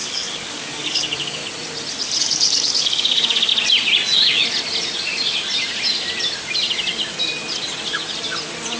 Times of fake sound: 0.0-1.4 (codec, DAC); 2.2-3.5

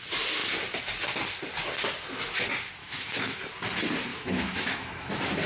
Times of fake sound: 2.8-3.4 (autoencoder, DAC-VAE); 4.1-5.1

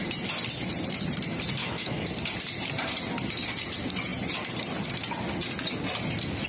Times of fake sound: 1.6-2.1 (autoencoder, DAC-VAE)